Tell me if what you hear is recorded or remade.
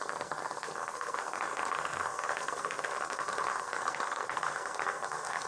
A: remade